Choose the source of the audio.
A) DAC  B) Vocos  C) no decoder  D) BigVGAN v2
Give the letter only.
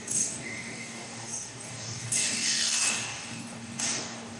A